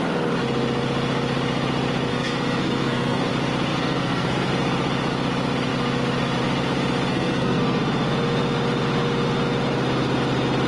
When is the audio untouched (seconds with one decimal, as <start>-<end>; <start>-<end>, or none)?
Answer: 0.0-2.1; 3.3-3.7; 4.5-7.1; 7.8-10.7